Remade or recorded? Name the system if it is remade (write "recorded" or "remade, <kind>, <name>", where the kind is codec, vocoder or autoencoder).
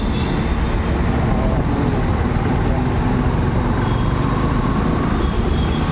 recorded